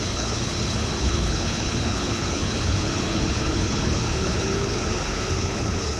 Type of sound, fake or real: fake